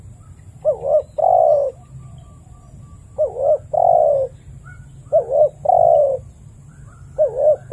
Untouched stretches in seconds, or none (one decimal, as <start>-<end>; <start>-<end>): 0.0-5.1; 6.5-7.7